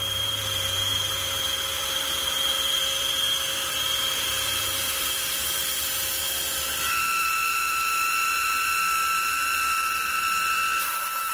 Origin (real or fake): fake